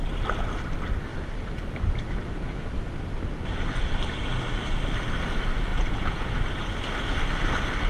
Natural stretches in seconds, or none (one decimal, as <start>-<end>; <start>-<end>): 0.0-5.7; 6.4-7.9